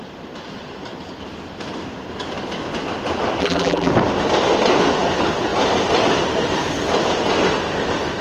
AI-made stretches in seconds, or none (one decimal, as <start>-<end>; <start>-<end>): 3.4-3.9